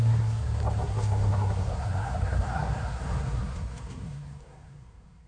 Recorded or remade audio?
remade